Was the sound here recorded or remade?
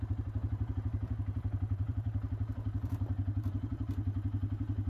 remade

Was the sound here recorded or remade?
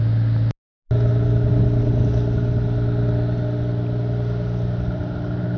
recorded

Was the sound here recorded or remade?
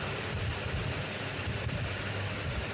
remade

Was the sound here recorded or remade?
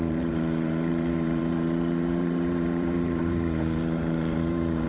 remade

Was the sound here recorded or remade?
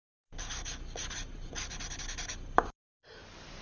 recorded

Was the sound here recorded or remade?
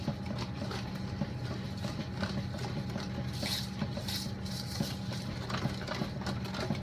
recorded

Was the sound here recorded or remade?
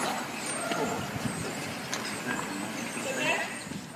recorded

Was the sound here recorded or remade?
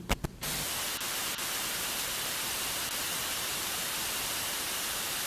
remade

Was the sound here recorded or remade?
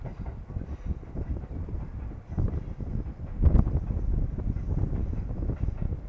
remade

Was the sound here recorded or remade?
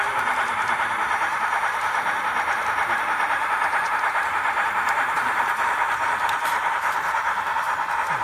remade